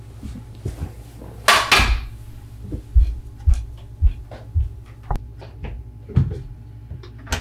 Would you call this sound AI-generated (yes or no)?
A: no